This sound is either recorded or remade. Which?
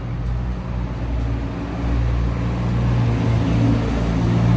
recorded